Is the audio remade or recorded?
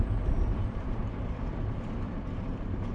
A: remade